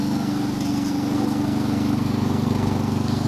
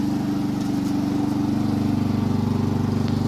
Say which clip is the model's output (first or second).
first